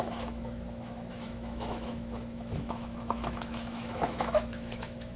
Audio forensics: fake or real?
fake